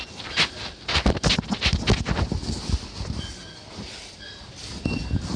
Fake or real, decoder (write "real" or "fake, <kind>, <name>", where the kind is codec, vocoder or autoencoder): real